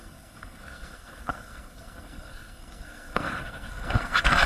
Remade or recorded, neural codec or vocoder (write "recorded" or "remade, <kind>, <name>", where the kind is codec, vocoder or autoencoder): remade, codec, SNAC